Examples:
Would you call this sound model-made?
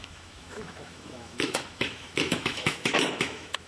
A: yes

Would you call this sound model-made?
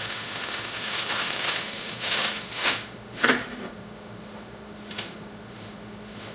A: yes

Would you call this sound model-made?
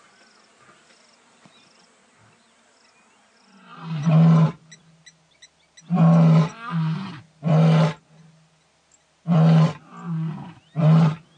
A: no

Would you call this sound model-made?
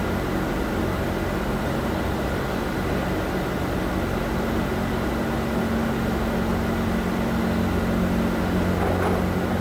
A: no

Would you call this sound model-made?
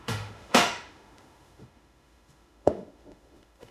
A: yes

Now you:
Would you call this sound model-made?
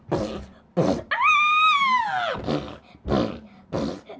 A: no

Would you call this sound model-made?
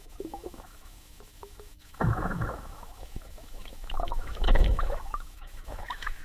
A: yes